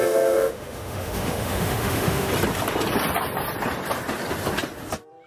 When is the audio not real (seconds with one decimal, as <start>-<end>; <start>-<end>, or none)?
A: 0.0-2.3